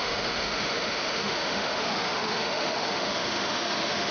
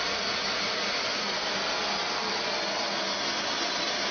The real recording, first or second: second